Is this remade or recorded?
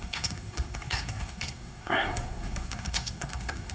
remade